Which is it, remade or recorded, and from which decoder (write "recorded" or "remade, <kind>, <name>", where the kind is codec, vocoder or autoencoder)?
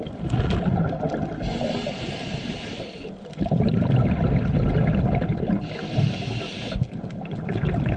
recorded